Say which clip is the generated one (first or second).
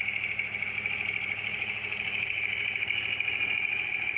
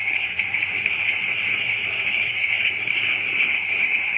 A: second